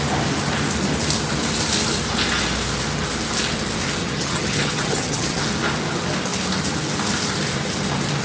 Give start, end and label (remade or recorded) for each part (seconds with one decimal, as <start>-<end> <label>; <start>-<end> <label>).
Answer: 0.0-4.0 recorded; 4.0-5.4 remade; 5.4-8.2 recorded